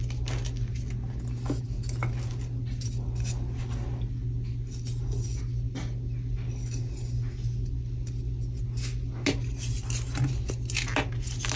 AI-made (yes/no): no